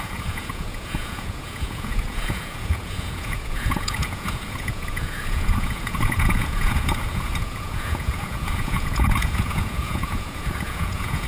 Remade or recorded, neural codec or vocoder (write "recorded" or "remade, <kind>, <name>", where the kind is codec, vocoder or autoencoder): remade, vocoder, Vocos